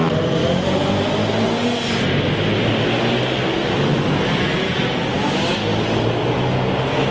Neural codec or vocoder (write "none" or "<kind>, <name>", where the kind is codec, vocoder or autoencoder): none